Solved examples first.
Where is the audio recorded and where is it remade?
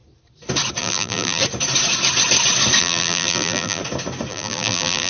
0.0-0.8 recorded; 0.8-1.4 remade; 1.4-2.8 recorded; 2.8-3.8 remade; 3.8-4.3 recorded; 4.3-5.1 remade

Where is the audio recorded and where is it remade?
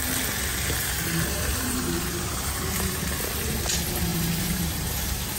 0.0-0.5 recorded; 0.5-3.0 remade; 3.0-4.1 recorded; 4.1-5.4 remade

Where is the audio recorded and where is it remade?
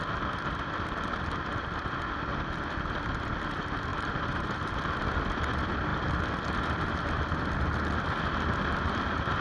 0.0-3.9 recorded; 3.9-4.6 remade; 4.6-9.4 recorded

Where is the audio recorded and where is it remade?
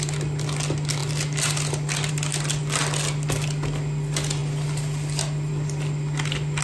0.0-6.6 recorded